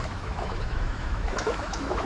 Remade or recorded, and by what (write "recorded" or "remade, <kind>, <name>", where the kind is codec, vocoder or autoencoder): remade, autoencoder, DAC-VAE